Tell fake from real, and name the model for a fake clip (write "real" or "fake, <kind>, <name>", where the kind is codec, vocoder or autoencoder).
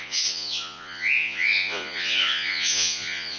fake, vocoder, Vocos